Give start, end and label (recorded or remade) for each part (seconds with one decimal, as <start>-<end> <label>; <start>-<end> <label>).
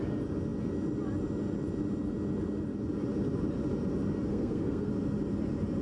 0.0-4.3 recorded; 4.3-4.9 remade; 4.9-5.8 recorded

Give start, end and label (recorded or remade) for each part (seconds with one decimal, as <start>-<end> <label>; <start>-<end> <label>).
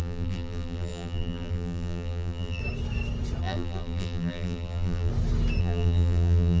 0.0-2.6 remade; 2.6-3.4 recorded; 3.4-5.1 remade; 5.1-5.6 recorded; 5.6-6.6 remade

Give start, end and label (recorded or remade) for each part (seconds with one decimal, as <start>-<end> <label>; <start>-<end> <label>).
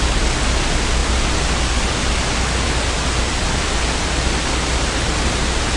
0.0-5.8 recorded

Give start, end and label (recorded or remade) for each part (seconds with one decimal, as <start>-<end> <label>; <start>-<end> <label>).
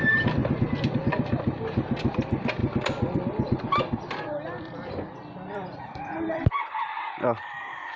0.0-2.6 recorded; 2.6-6.8 remade; 6.8-8.0 recorded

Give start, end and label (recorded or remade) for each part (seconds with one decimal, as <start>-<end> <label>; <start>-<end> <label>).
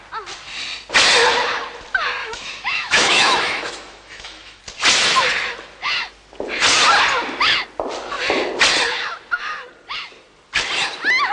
0.0-2.2 recorded; 2.2-4.6 remade; 4.6-11.3 recorded